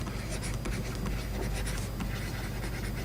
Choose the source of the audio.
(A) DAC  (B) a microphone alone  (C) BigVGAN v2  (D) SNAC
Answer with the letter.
B